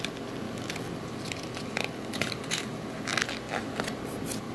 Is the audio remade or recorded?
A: recorded